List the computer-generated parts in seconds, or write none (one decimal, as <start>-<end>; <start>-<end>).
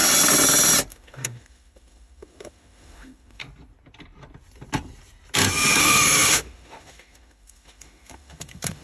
0.9-3.4; 5.8-8.8